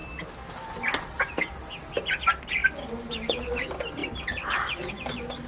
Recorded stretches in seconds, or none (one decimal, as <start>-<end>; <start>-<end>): 0.0-5.5